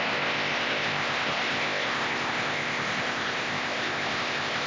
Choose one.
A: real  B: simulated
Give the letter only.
B